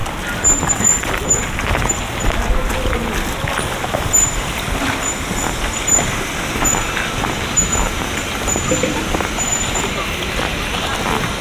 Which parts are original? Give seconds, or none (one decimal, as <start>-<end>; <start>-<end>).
0.0-11.4